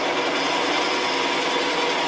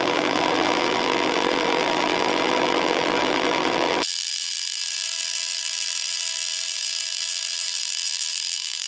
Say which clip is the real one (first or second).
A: first